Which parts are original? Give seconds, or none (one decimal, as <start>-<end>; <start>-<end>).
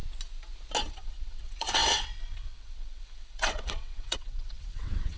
0.0-0.9